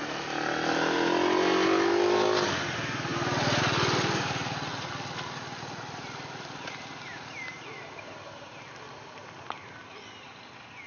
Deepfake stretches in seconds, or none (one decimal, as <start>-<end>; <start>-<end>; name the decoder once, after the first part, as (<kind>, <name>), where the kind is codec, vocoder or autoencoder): none